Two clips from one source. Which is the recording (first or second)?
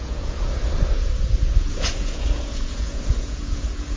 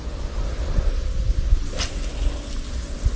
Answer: second